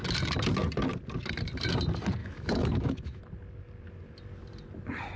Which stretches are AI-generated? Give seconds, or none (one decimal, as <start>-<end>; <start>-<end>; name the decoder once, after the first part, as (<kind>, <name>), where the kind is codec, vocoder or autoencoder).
2.2-3.2 (autoencoder, DAC-VAE)